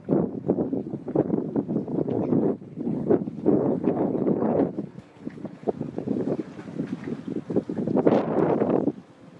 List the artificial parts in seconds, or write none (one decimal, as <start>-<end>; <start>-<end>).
0.8-1.3; 1.9-5.7